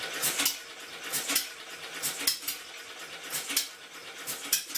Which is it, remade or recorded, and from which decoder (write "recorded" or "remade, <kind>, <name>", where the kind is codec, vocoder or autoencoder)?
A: recorded